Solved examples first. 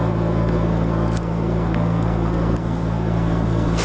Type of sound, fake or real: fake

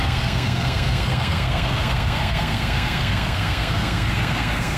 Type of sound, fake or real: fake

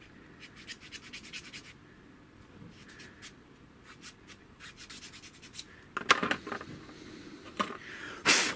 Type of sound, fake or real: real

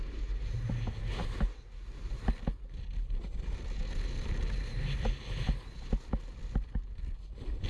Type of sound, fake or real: real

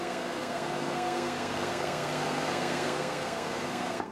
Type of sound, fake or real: fake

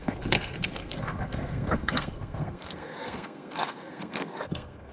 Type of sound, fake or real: fake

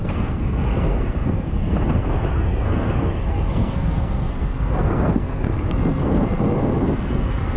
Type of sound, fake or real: fake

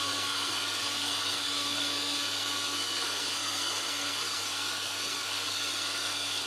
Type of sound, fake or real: fake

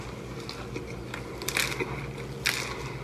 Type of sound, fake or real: real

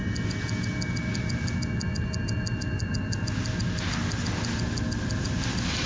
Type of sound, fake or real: real